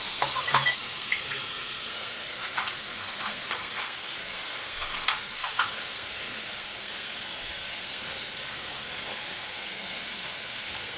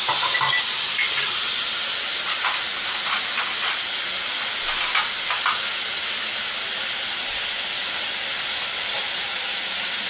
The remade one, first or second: first